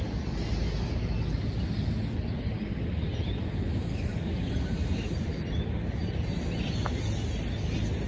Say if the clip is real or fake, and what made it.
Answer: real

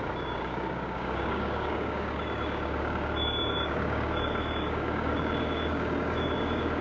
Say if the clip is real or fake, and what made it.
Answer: fake, codec, DAC